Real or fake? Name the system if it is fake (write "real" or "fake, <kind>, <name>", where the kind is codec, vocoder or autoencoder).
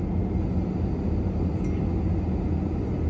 real